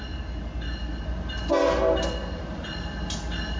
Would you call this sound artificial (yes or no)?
no